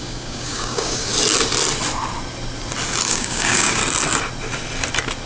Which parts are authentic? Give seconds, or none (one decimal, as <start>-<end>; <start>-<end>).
1.1-3.1; 3.8-5.3